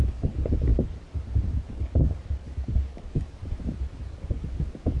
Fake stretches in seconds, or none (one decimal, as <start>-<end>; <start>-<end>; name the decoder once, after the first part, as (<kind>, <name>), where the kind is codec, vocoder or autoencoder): 0.0-0.7 (codec, DAC); 1.7-3.4; 4.0-5.0